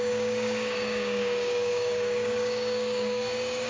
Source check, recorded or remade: remade